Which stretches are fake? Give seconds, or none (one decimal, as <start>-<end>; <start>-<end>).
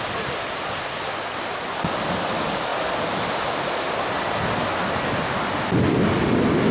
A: none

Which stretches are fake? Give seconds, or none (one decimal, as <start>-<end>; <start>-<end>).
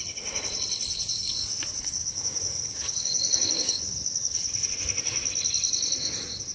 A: 2.0-3.8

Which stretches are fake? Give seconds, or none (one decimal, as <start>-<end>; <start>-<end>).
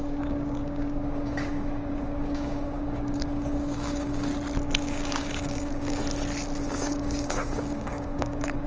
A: 0.0-4.3; 4.8-6.0; 6.6-8.7